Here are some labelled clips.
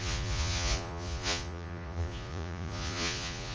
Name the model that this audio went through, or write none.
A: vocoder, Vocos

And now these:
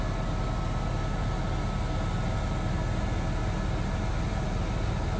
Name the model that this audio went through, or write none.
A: none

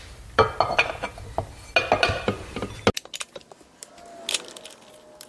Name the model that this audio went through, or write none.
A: none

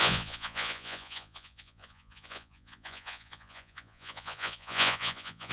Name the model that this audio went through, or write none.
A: vocoder, Vocos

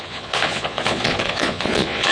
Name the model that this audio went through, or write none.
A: vocoder, Vocos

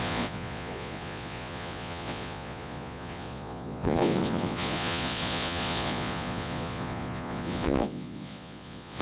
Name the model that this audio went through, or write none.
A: vocoder, Vocos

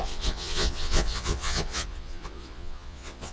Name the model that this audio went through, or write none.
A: vocoder, Vocos